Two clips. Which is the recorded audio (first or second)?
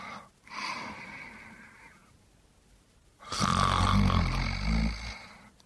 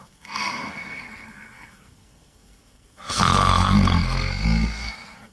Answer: first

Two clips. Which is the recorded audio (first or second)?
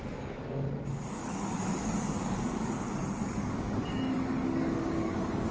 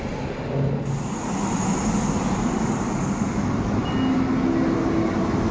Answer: second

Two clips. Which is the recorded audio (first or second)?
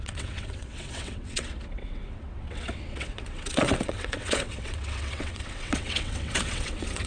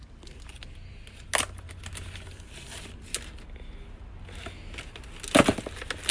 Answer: second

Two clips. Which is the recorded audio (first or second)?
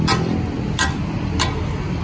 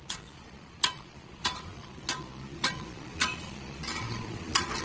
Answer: first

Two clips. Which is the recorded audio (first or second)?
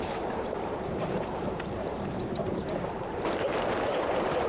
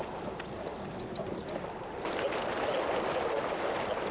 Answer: second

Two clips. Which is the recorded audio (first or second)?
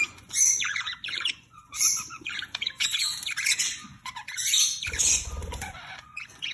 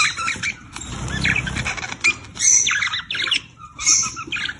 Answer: second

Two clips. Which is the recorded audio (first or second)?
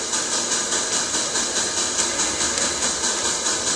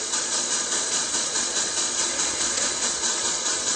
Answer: first